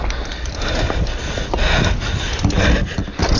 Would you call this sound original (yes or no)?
yes